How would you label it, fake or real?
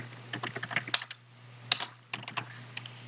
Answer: real